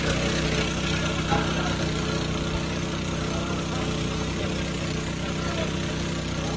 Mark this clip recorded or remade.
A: recorded